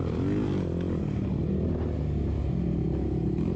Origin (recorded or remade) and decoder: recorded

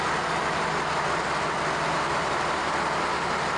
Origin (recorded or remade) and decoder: recorded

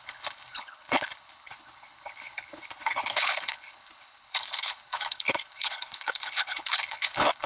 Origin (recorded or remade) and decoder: remade, codec, HILCodec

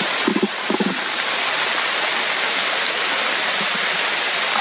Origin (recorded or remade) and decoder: recorded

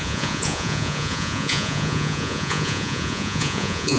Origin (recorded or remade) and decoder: remade, vocoder, Vocos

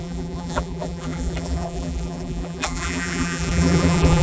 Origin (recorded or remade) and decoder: remade, vocoder, BigVGAN v2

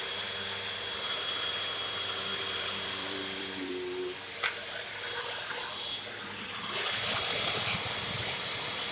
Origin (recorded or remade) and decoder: remade, vocoder, BigVGAN v2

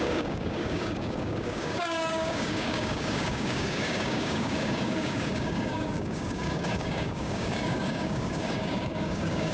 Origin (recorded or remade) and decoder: remade, codec, DAC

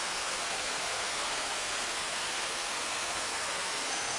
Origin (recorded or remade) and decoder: remade, codec, SNAC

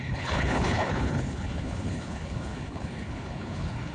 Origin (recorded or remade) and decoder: remade, codec, HILCodec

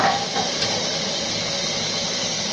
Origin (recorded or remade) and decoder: recorded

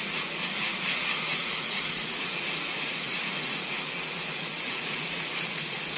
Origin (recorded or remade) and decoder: remade, vocoder, Vocos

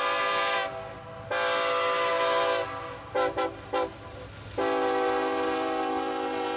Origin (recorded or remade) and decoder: recorded